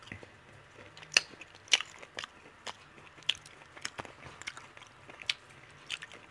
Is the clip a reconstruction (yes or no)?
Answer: no